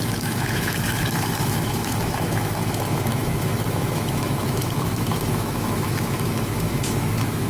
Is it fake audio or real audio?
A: fake